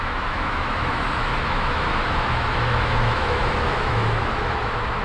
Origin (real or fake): fake